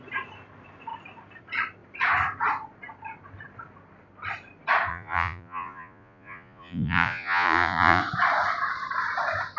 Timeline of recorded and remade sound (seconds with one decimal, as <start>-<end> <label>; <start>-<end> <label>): 0.0-4.9 recorded; 4.9-8.0 remade; 8.0-9.6 recorded